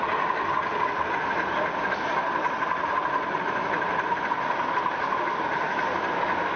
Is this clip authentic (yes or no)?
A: yes